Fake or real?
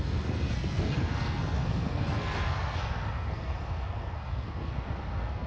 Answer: fake